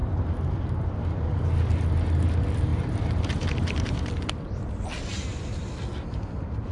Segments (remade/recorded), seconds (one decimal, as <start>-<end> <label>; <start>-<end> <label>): 0.0-1.4 remade; 1.4-2.7 recorded; 2.7-4.1 remade; 4.1-6.7 recorded